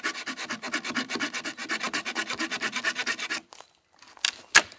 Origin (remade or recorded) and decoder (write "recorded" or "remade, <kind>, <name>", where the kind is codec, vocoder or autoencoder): recorded